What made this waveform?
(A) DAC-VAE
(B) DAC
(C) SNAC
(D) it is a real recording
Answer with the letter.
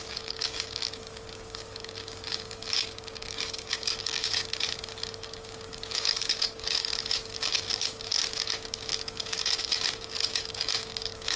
B